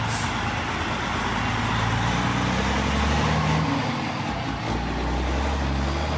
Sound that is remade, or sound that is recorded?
recorded